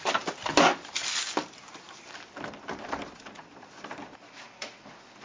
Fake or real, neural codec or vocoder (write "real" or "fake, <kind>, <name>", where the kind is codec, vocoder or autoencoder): real